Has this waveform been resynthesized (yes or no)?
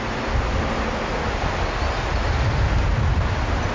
no